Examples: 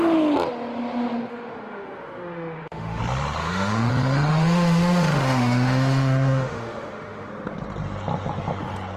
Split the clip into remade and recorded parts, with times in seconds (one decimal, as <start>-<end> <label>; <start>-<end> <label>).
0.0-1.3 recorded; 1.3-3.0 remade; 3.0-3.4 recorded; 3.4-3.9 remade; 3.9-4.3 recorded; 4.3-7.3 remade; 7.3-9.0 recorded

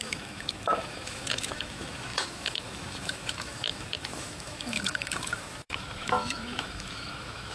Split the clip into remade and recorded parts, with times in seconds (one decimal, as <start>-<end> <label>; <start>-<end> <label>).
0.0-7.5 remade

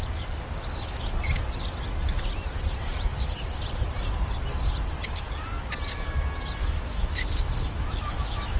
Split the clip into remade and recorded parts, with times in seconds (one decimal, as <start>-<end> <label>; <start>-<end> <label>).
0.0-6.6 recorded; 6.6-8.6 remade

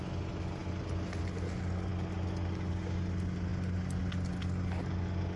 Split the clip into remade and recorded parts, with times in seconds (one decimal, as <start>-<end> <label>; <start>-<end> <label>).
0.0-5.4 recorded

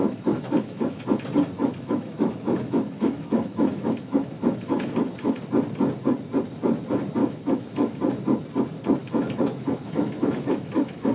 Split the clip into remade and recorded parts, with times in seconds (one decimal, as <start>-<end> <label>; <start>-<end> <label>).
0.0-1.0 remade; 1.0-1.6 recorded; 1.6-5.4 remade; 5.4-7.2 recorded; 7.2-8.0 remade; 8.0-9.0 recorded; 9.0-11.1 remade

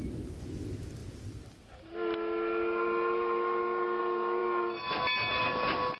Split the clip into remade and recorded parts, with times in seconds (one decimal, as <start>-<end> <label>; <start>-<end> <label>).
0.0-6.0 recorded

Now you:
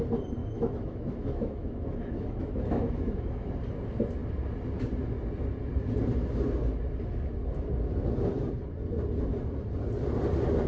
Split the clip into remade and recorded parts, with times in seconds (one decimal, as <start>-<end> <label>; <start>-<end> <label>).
0.0-0.4 recorded; 0.4-3.5 remade; 3.5-10.7 recorded

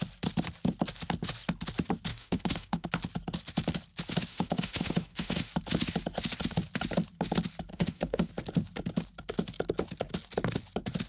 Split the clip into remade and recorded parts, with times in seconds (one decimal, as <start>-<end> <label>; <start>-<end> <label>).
0.0-2.1 recorded; 2.1-2.9 remade; 2.9-4.3 recorded; 4.3-5.5 remade; 5.5-7.7 recorded; 7.7-8.3 remade; 8.3-11.1 recorded